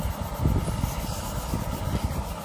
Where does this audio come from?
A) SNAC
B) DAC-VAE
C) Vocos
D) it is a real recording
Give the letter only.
D